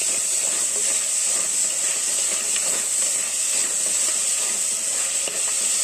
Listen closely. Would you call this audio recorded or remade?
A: recorded